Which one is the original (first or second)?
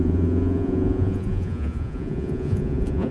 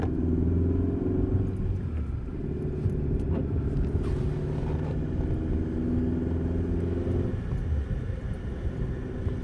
second